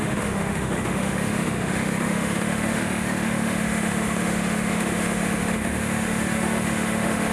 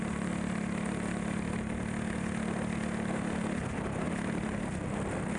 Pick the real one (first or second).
second